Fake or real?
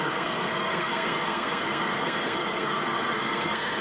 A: fake